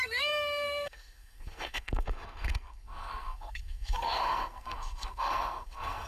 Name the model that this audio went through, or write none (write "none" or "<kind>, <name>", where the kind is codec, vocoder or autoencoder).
codec, SNAC